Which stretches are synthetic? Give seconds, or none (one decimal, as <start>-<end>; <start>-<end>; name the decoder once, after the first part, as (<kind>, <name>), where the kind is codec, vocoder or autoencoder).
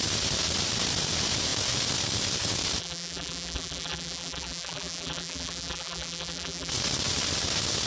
2.8-6.7 (vocoder, BigVGAN v2)